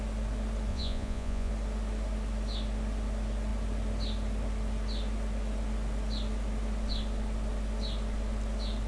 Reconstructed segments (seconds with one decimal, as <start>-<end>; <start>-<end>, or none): 0.7-1.5